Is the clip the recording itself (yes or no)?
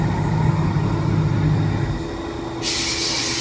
yes